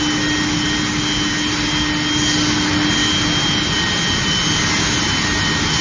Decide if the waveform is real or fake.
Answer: real